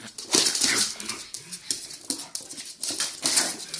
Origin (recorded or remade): recorded